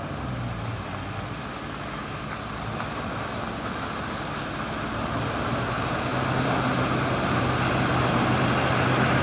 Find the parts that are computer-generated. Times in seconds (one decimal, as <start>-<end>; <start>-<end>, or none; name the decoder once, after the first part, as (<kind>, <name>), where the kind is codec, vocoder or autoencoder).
none